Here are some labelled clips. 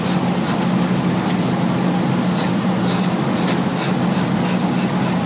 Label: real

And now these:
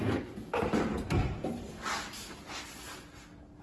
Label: real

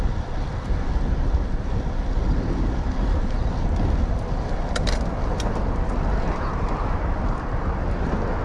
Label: real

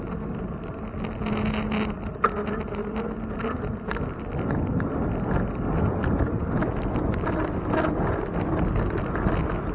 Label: real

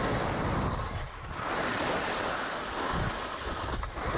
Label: real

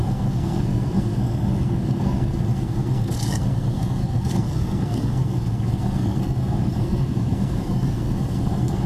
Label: fake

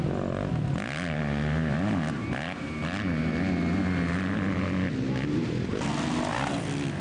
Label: real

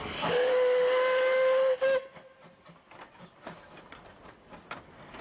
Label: real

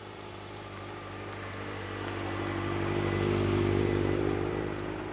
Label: real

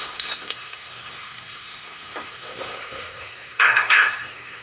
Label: fake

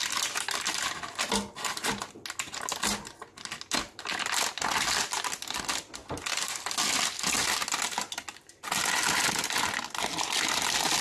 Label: real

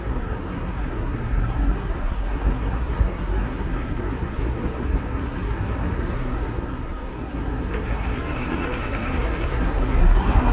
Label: fake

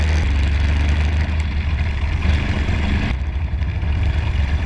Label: real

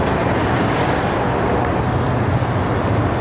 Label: real